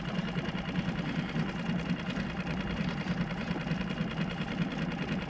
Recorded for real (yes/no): yes